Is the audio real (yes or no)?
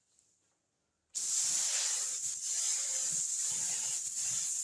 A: yes